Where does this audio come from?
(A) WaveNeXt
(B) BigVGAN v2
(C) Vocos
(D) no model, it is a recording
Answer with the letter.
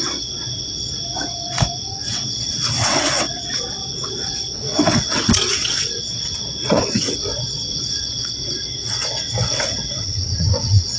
A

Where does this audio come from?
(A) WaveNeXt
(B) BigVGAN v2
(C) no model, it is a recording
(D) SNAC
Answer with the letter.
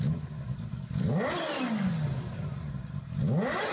C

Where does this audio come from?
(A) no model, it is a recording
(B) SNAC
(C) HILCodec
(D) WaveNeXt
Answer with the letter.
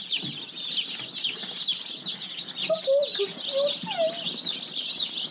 A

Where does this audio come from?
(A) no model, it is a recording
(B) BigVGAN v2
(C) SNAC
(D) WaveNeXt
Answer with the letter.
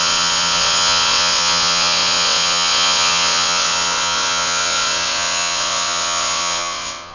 D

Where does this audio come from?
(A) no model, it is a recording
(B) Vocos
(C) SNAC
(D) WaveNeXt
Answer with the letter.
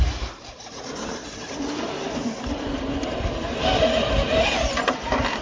A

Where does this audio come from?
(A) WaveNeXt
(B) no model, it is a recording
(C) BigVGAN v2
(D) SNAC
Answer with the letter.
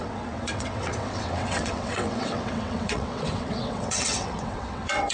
A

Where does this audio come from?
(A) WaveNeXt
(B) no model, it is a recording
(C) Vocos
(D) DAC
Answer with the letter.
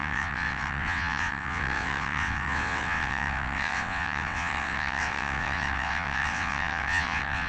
A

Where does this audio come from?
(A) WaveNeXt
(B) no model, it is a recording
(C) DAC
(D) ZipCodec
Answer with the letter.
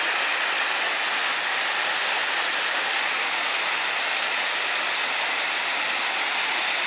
B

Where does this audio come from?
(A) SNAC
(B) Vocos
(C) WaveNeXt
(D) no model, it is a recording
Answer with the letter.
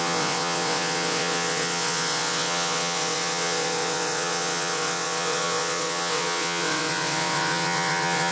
C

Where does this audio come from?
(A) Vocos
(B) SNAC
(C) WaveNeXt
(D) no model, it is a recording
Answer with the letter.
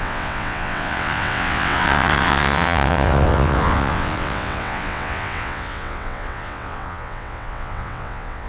C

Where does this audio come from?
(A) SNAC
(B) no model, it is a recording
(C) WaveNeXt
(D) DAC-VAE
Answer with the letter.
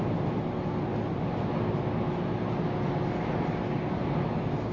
B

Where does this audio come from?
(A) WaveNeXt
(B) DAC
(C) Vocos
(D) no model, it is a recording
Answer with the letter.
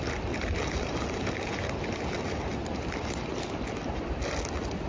D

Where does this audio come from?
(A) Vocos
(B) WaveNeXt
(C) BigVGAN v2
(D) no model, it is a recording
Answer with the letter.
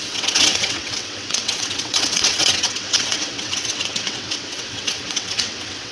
B